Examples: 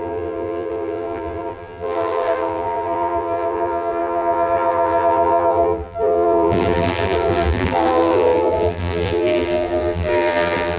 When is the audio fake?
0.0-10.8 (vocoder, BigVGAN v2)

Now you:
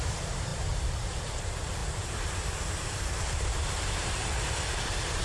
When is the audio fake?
0.0-5.2 (vocoder, BigVGAN v2)

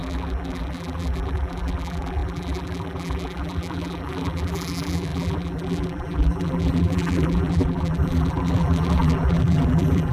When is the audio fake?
0.0-10.1 (vocoder, BigVGAN v2)

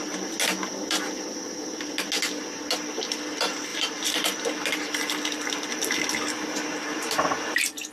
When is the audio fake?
3.7-4.5 (vocoder, BigVGAN v2)

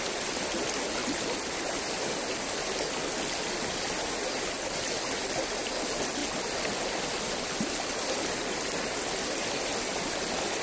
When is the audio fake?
none

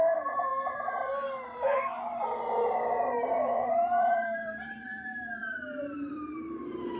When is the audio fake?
0.0-0.5 (vocoder, BigVGAN v2); 3.0-7.0

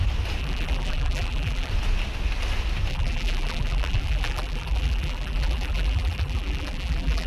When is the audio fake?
0.4-1.7 (vocoder, BigVGAN v2); 2.9-7.3